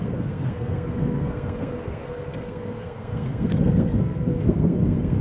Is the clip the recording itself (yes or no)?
no